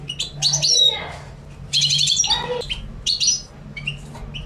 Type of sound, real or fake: real